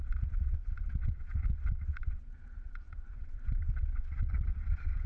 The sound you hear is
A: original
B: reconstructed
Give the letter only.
B